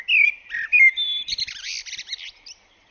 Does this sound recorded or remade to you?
recorded